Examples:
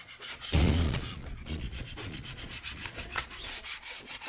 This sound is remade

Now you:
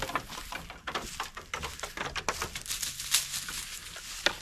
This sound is recorded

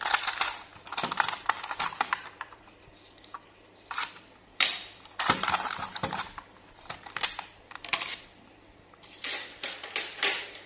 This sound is remade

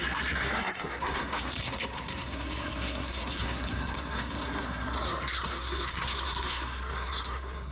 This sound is remade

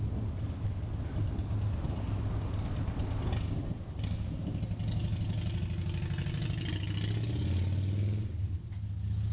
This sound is recorded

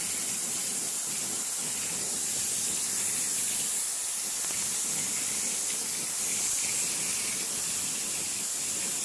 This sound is recorded